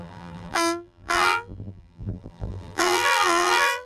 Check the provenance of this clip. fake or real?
fake